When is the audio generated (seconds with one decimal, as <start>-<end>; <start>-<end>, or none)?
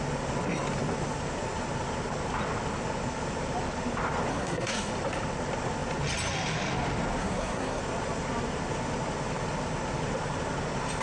4.3-4.9; 7.2-7.8